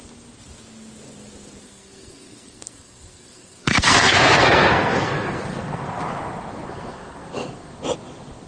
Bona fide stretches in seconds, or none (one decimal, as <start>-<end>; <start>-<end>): 0.0-1.6; 6.0-6.5; 7.7-8.5